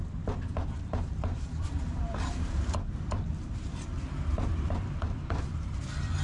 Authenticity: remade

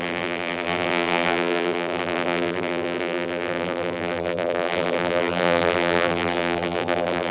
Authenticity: remade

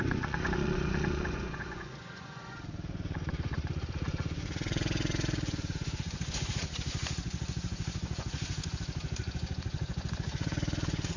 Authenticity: remade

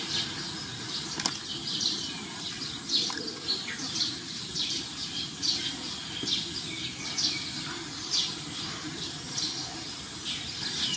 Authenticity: recorded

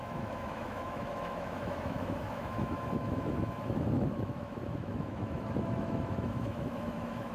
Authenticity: remade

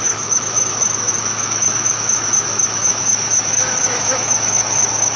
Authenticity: remade